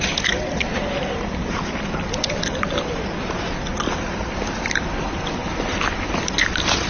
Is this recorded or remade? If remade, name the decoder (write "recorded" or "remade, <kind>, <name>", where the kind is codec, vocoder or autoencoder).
remade, vocoder, BigVGAN v2